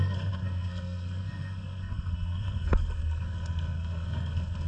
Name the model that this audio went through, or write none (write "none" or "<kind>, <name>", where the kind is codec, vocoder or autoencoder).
codec, SNAC